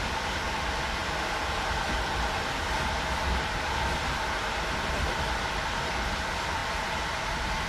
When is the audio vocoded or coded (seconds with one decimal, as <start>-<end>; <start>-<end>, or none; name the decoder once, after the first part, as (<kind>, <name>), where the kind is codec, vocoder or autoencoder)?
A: none